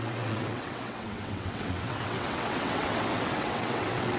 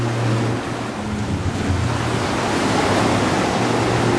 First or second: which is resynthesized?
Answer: first